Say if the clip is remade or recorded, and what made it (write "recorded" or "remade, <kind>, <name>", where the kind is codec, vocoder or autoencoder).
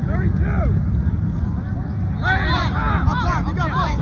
recorded